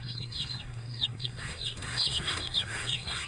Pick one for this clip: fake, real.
fake